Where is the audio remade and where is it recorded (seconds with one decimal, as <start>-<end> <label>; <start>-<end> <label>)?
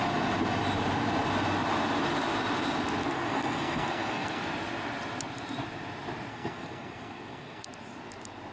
0.0-3.0 recorded; 3.0-4.4 remade; 4.4-6.3 recorded; 6.3-7.7 remade; 7.7-8.5 recorded